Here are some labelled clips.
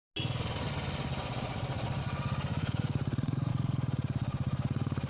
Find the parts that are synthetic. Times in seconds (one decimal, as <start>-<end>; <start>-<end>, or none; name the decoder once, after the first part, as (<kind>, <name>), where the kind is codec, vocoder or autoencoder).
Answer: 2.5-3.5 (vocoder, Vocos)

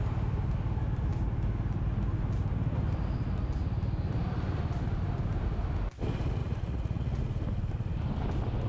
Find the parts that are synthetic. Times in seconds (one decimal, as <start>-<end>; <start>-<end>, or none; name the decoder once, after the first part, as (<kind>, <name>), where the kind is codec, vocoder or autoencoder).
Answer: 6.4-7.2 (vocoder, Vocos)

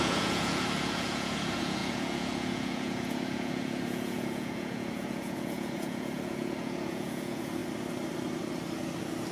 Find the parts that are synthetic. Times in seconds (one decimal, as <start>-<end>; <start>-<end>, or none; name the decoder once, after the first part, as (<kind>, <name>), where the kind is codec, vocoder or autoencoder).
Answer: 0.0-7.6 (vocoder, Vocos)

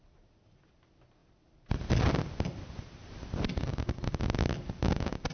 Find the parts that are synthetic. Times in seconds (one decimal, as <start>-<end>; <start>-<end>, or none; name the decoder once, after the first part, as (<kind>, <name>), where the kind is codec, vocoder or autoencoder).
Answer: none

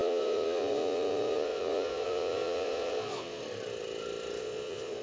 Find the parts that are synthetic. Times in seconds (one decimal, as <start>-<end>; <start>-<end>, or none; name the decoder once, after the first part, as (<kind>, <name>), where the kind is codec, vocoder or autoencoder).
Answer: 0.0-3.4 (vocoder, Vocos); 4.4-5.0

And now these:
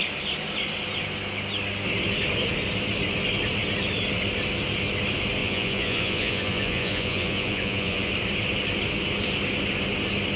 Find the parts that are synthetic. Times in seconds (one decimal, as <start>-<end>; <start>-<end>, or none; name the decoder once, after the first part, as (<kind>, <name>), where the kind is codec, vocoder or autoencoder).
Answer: 5.4-8.1 (vocoder, Vocos)

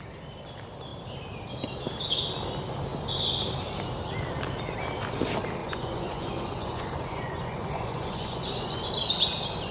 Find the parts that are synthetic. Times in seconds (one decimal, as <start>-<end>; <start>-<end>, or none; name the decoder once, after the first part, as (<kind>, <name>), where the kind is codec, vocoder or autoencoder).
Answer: 5.6-8.9 (vocoder, Vocos)

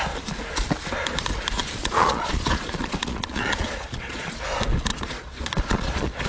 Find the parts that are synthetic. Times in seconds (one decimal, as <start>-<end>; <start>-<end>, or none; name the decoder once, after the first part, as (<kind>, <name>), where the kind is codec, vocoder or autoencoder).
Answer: 1.8-4.3 (vocoder, Vocos); 4.9-6.3